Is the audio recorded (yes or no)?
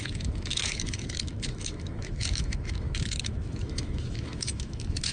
no